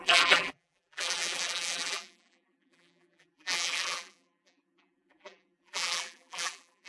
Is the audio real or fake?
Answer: fake